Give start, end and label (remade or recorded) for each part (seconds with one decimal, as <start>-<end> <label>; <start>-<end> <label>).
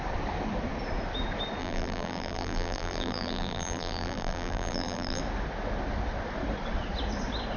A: 0.0-1.6 recorded; 1.6-5.2 remade; 5.2-7.6 recorded